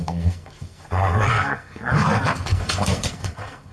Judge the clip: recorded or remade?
remade